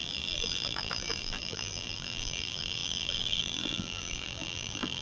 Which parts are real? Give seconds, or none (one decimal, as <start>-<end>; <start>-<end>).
none